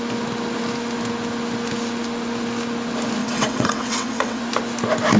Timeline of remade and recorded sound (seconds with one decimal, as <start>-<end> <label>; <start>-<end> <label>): 0.0-3.2 recorded; 3.2-4.4 remade; 4.4-5.2 recorded